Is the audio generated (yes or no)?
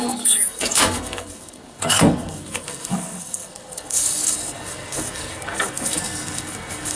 yes